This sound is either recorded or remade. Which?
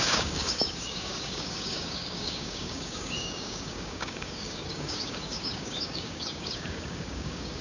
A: remade